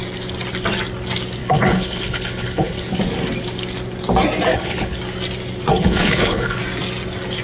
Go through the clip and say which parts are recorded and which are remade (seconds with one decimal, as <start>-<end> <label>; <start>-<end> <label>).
0.0-1.4 recorded; 1.4-2.9 remade; 2.9-4.5 recorded; 4.5-5.0 remade; 5.0-5.7 recorded; 5.7-6.6 remade; 6.6-7.4 recorded